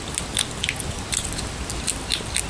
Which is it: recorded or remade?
recorded